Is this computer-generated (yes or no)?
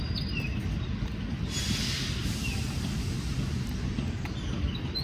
no